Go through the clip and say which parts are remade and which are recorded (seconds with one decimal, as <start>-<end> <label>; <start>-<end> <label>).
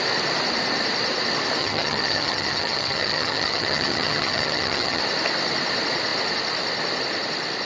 0.0-1.6 recorded; 1.6-5.0 remade; 5.0-7.6 recorded